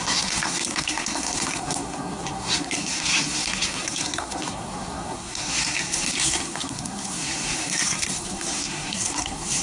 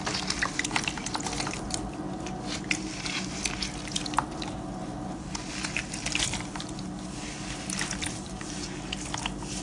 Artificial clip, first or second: first